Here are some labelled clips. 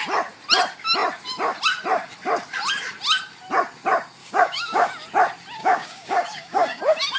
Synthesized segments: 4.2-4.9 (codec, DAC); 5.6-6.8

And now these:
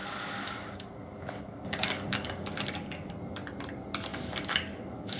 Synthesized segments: 0.0-3.1 (codec, DAC); 4.1-5.2